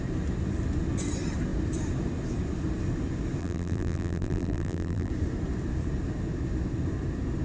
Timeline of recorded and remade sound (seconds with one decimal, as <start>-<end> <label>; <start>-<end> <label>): 0.0-3.4 recorded; 3.4-5.1 remade; 5.1-7.4 recorded